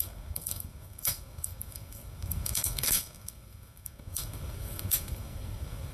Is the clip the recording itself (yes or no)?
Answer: no